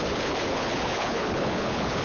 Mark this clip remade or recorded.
remade